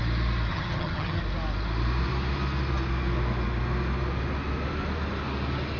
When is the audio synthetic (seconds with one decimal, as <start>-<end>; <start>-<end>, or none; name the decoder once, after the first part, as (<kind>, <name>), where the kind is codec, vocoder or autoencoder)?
0.5-1.2 (vocoder, HiFi-GAN)